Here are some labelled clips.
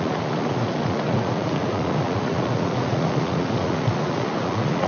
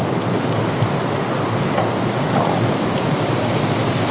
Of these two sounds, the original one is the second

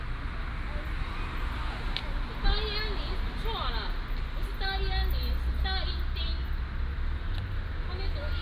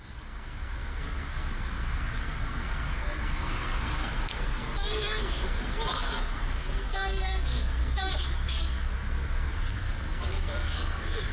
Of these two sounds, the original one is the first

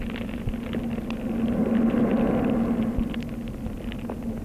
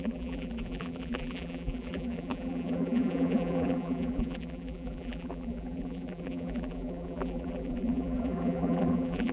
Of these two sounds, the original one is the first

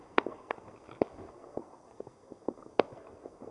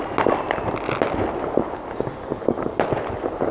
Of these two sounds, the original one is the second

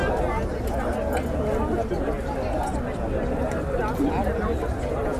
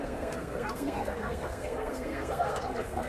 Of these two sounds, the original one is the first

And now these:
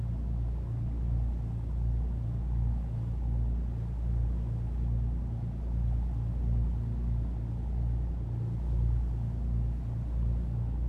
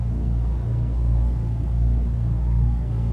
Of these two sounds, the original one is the first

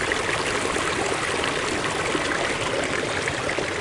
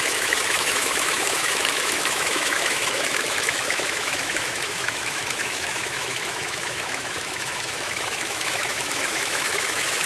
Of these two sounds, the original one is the first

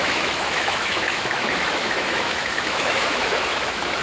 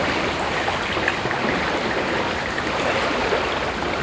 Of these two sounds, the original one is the second